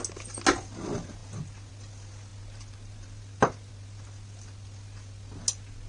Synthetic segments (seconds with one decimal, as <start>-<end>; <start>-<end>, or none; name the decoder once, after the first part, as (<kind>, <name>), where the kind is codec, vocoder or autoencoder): none